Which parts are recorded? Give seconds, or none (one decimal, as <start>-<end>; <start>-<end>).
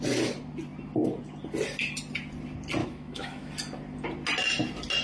0.0-2.8; 3.5-5.0